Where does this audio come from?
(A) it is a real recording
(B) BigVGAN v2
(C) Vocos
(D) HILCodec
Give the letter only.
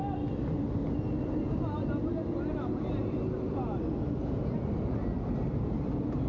A